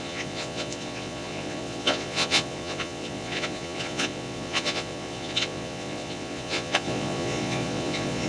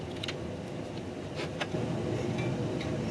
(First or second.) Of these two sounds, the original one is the second